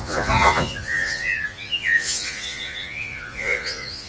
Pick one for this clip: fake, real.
fake